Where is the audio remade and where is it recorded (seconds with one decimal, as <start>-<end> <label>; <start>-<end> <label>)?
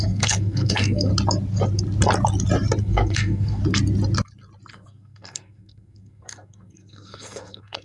0.0-1.1 remade; 1.1-2.8 recorded; 2.8-3.6 remade; 3.6-4.7 recorded; 4.7-7.8 remade